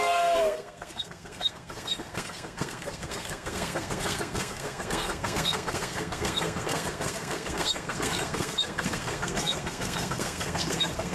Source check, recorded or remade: remade